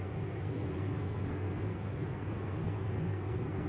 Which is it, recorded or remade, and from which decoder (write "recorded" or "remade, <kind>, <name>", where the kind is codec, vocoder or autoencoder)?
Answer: remade, codec, SNAC